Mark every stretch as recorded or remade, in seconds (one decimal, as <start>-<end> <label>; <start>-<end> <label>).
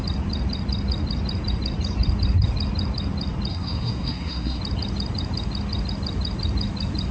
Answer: 0.0-3.5 recorded; 3.5-4.6 remade; 4.6-7.1 recorded